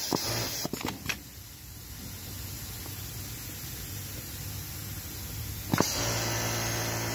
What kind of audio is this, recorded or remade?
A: recorded